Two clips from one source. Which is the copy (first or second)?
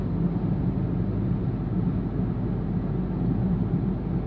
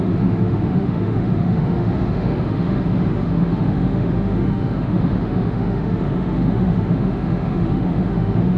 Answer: second